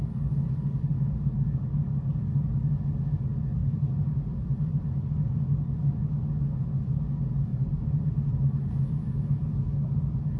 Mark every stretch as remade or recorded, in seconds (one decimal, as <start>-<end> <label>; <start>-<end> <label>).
0.0-3.6 recorded; 3.6-5.3 remade; 5.3-7.5 recorded; 7.5-8.5 remade; 8.5-10.4 recorded